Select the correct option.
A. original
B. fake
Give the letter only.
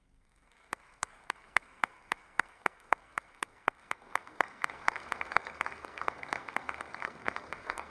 B